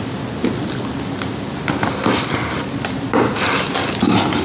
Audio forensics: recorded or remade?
recorded